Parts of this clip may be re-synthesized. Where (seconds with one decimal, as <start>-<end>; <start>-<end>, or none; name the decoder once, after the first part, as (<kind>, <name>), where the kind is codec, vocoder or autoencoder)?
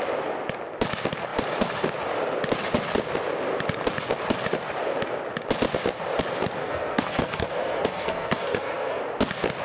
6.6-9.0 (codec, SNAC)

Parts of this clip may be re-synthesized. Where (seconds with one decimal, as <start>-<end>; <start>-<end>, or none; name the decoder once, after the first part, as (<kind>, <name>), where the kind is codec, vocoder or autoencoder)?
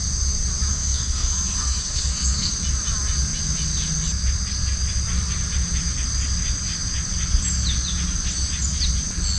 0.7-2.5 (codec, SNAC)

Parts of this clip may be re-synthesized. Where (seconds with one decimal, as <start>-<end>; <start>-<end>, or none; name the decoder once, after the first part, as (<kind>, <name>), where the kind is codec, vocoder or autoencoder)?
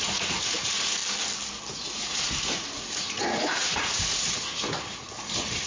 0.0-1.0 (vocoder, Vocos); 1.7-5.7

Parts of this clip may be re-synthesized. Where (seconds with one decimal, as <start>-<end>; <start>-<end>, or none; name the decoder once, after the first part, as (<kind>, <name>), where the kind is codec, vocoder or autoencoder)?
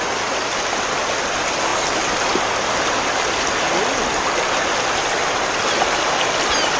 none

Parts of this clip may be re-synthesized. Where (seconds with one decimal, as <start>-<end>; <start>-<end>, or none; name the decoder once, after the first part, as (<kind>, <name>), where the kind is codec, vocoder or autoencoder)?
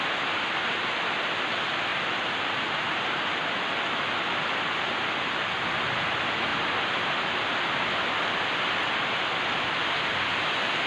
1.9-3.5 (vocoder, BigVGAN v2)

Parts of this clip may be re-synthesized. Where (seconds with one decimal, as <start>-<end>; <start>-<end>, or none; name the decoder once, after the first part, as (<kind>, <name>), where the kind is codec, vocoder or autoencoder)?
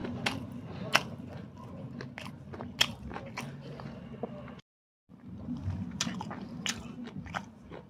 none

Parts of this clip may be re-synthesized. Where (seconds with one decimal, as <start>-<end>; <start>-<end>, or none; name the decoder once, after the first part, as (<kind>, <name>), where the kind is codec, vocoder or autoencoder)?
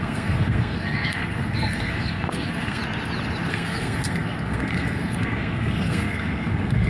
0.0-2.8 (codec, SNAC); 3.5-6.9